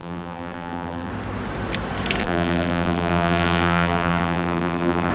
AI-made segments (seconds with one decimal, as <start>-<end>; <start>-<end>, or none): 0.0-1.1; 2.2-5.1